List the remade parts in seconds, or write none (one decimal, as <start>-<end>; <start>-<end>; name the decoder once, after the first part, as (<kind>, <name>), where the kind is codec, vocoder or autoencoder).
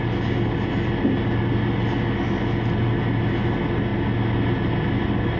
none